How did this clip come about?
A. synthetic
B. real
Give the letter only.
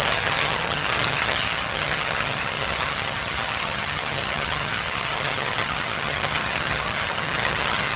A